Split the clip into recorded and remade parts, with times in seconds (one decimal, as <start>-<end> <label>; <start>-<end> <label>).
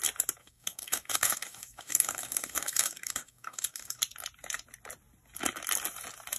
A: 0.0-0.4 recorded; 0.4-4.0 remade; 4.0-6.4 recorded